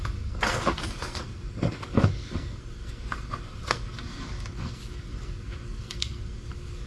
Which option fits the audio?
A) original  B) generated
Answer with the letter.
B